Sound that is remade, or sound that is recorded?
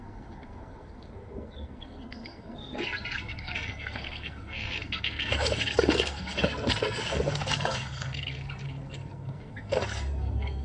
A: remade